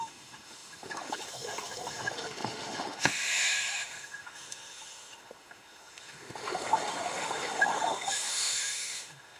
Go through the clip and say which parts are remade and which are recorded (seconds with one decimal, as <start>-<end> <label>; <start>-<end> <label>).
0.0-9.4 remade